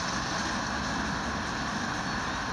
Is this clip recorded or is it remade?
recorded